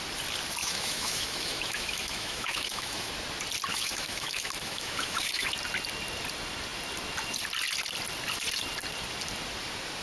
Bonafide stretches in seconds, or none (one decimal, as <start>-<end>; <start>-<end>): 0.0-0.6; 3.1-3.7; 5.5-10.0